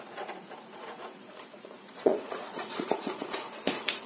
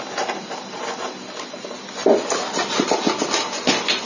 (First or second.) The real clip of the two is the second